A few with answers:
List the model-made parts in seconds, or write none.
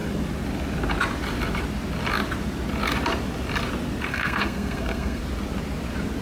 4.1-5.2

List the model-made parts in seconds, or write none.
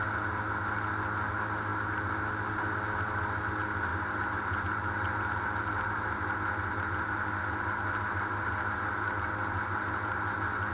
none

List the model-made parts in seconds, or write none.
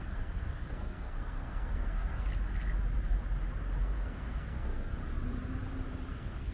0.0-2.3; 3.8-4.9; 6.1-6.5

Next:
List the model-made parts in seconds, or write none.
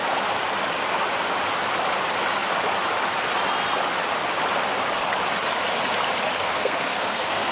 6.4-7.5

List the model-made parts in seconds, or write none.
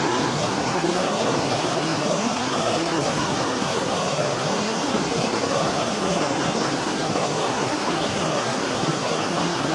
0.0-9.7